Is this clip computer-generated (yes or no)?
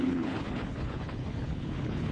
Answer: yes